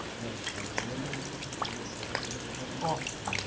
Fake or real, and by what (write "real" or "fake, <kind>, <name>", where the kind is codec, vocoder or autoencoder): real